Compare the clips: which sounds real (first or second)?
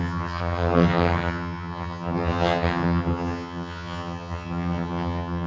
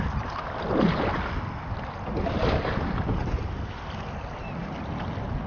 second